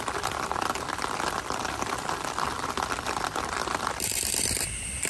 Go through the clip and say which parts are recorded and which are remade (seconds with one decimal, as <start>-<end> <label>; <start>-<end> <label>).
0.0-3.6 recorded; 3.6-5.1 remade